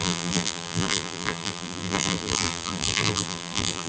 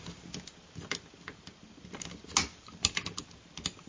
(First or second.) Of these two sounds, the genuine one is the second